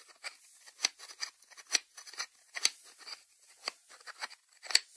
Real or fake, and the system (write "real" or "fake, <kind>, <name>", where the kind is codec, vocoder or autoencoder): real